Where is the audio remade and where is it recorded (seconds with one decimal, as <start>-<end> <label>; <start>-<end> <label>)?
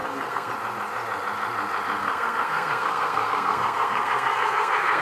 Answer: 0.0-0.5 remade; 0.5-2.0 recorded; 2.0-5.0 remade